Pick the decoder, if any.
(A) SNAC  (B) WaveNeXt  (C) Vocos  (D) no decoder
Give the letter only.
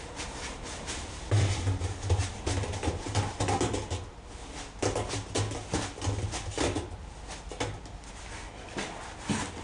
D